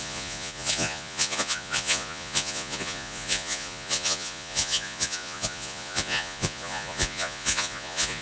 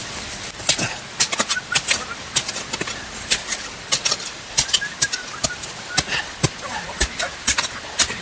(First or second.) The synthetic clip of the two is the first